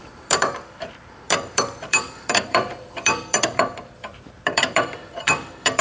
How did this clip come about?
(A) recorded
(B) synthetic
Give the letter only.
B